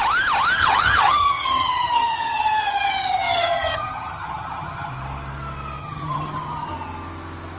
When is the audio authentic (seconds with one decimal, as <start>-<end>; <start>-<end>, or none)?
0.0-0.6; 4.9-5.8; 6.7-7.6